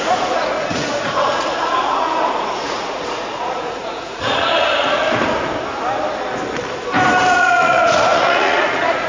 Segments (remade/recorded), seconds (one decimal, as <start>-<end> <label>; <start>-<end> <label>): 0.0-5.0 remade; 5.0-7.3 recorded; 7.3-9.1 remade